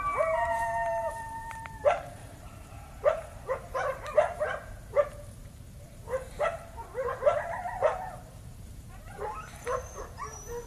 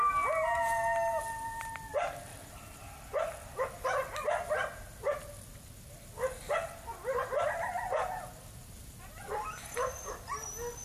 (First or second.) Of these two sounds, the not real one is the first